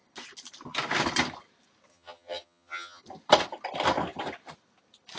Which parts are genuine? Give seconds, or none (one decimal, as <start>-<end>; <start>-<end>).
0.0-1.9; 3.0-5.2